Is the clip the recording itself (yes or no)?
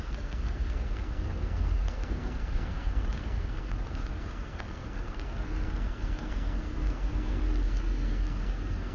no